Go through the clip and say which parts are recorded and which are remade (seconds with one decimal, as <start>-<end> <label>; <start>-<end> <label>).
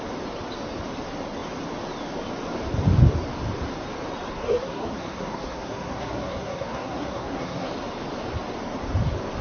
0.0-4.3 recorded; 4.3-7.7 remade; 7.7-9.4 recorded